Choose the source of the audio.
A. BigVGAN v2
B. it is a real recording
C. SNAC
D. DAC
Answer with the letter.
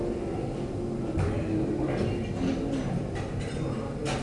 B